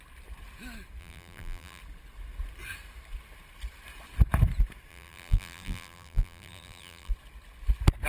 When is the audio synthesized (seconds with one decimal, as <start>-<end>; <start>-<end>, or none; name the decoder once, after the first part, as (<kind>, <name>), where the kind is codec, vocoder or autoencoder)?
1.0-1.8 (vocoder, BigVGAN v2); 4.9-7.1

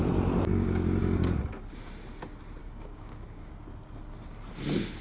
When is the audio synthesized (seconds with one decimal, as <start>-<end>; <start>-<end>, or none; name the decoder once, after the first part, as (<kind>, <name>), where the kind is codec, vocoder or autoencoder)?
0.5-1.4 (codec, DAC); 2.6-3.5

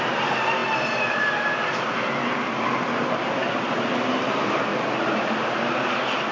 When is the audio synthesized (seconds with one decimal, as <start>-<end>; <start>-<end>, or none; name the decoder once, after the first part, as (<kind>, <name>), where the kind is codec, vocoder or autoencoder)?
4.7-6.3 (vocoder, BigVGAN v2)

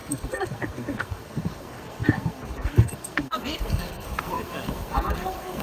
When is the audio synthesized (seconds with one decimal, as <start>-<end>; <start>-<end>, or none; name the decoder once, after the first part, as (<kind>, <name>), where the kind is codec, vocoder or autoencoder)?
0.0-5.6 (codec, SNAC)

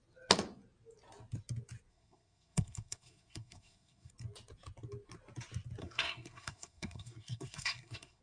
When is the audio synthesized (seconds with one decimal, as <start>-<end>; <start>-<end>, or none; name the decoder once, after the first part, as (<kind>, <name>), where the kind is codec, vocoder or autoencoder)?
1.9-4.1 (codec, SNAC); 5.8-8.2

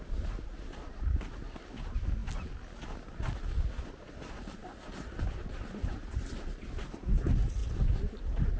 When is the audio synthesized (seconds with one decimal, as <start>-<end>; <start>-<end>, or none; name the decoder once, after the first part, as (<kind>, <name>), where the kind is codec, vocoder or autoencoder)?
none

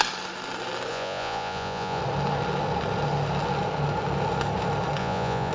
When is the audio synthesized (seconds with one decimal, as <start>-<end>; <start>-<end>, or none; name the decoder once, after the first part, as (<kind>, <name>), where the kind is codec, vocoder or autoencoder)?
0.9-2.0 (vocoder, Vocos); 5.0-5.5

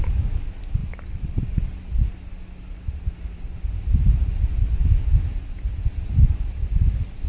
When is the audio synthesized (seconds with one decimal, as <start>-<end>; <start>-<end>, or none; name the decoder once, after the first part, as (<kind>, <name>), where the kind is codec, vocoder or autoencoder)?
none